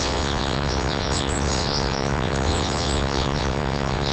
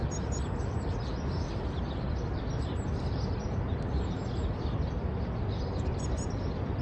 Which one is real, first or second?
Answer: second